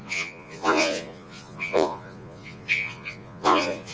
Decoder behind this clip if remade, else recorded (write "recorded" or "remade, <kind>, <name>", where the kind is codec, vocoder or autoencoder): remade, vocoder, Vocos